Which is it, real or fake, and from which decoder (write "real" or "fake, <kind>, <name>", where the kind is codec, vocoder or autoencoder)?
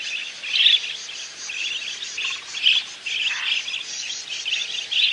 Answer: real